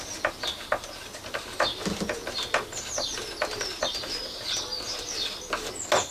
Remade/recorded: recorded